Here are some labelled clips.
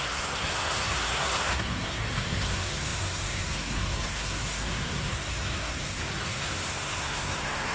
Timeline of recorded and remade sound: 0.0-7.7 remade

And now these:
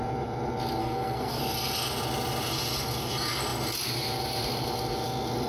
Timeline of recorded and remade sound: 0.0-0.8 recorded; 0.8-1.4 remade; 1.4-5.5 recorded

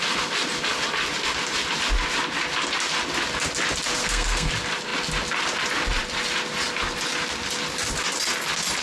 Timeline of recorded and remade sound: 0.0-4.0 recorded; 4.0-4.5 remade; 4.5-8.8 recorded

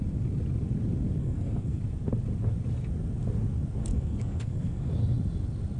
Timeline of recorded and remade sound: 0.0-1.2 recorded; 1.2-1.8 remade; 1.8-3.8 recorded; 3.8-4.9 remade; 4.9-5.8 recorded

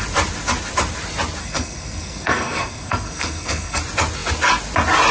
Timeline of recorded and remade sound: 0.0-1.4 recorded; 1.4-3.8 remade; 3.8-5.1 recorded